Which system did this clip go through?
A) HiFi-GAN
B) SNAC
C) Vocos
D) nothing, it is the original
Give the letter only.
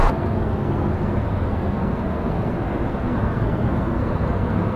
B